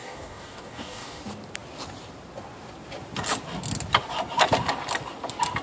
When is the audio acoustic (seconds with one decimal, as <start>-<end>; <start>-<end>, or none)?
1.2-5.6